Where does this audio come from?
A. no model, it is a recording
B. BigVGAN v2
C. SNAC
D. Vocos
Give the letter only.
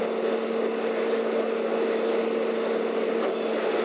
A